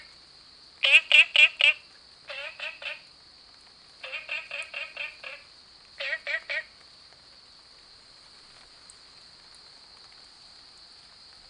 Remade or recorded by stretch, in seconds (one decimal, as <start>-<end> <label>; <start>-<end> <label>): 0.0-11.5 recorded